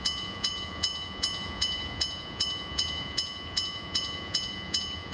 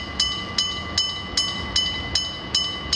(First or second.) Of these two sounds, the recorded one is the second